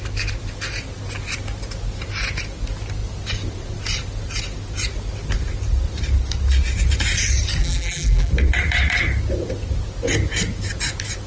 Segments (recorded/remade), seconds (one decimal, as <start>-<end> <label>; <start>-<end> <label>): 0.0-7.6 recorded; 7.6-8.3 remade; 8.3-11.3 recorded